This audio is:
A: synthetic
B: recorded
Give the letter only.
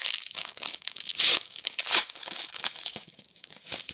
A